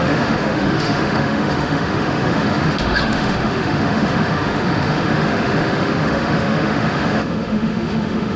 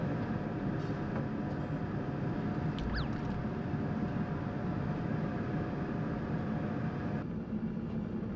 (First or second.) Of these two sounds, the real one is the second